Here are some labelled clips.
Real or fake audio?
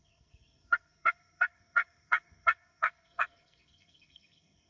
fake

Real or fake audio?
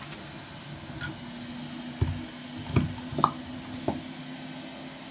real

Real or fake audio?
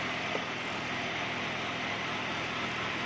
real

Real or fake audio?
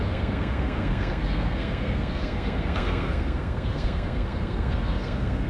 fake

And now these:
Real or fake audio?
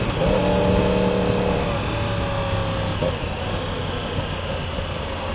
real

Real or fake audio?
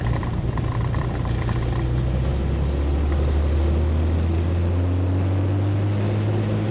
real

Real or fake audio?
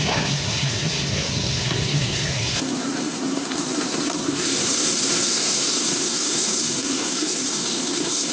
fake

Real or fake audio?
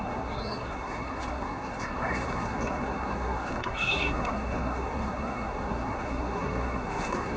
fake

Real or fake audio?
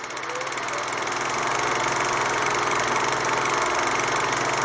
real